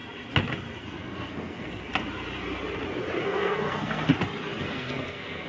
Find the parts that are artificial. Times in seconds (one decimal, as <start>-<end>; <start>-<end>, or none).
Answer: 0.8-1.9; 3.2-4.1; 4.6-5.5